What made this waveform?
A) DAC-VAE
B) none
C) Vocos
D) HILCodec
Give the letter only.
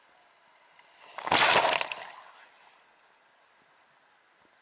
B